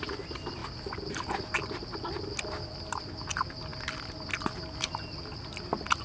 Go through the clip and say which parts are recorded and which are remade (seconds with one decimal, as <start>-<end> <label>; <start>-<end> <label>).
0.0-6.0 recorded